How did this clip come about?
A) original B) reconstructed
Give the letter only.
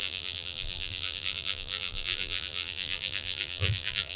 B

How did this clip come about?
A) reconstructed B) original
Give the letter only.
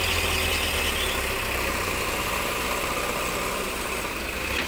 B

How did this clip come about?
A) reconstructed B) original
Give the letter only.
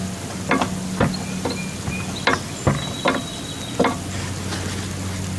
B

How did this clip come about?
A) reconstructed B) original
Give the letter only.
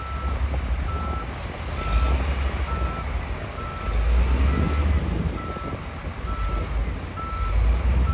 B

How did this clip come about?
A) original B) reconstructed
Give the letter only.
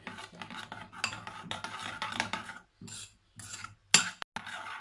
A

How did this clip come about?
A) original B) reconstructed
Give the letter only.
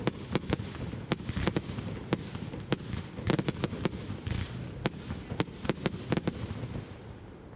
A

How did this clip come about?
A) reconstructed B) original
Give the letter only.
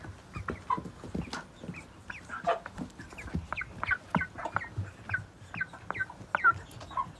B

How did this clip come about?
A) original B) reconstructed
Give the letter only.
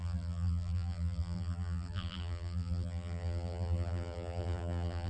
B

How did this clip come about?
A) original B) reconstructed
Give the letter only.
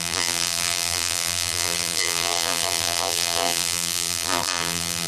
B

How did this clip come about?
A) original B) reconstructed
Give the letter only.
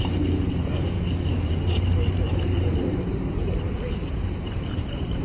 B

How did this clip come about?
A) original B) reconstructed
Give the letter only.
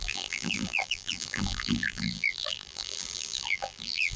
B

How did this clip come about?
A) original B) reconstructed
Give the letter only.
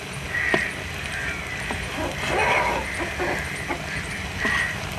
A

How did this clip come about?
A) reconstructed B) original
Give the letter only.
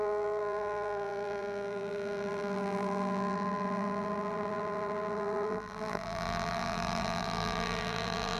A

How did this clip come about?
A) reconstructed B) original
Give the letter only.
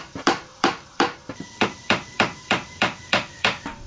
A